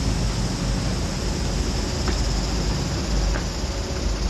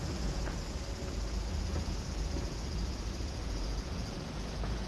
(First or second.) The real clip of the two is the first